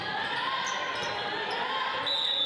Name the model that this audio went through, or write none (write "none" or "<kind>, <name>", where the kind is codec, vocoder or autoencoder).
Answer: none